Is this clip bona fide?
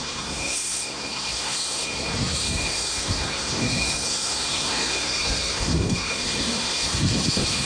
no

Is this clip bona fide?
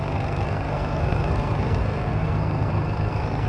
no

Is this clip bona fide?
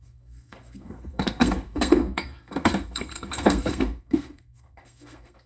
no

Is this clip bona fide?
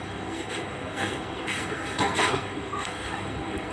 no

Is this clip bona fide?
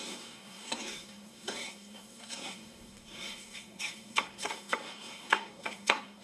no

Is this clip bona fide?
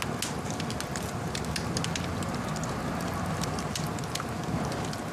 yes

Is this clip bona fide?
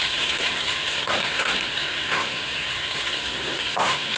no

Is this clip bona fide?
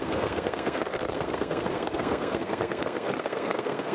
no